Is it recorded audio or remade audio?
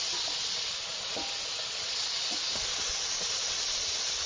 remade